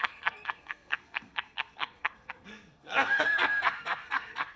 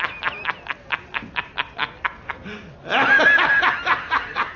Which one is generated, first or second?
first